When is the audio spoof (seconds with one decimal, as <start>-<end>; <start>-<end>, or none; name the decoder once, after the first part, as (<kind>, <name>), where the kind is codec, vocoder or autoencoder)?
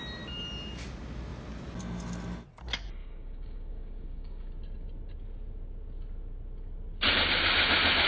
3.0-4.5 (codec, DAC)